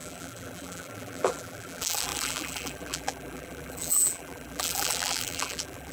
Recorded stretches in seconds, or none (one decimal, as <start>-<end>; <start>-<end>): none